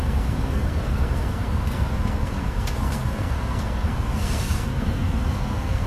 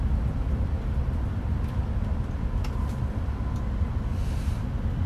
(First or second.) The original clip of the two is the second